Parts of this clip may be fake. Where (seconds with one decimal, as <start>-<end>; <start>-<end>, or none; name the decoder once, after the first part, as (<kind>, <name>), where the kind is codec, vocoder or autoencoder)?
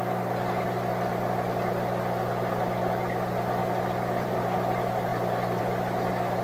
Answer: 3.6-4.4 (vocoder, BigVGAN v2); 5.1-5.6